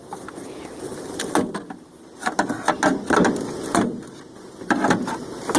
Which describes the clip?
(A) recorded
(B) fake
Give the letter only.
A